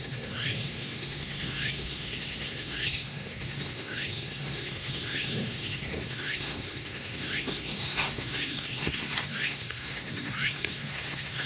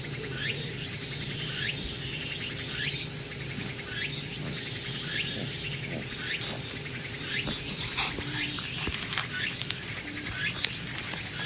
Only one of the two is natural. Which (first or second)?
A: second